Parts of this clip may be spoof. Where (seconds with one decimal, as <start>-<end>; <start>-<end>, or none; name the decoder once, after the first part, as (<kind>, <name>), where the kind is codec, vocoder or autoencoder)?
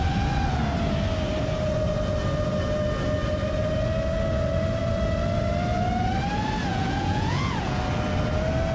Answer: 6.7-7.8 (vocoder, Vocos)